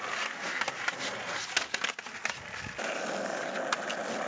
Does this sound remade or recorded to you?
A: recorded